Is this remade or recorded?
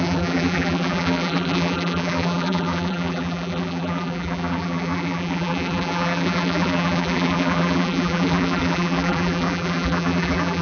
remade